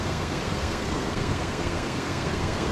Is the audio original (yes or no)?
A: no